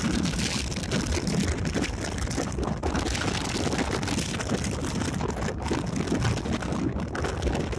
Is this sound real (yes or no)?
yes